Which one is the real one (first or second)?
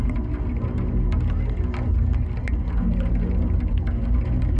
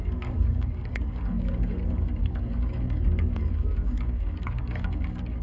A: first